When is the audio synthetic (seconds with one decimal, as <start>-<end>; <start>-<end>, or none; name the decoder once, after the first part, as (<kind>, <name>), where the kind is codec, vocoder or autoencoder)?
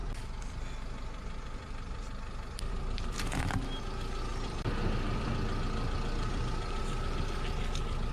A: 0.0-3.8 (vocoder, BigVGAN v2); 4.3-5.3; 6.3-6.8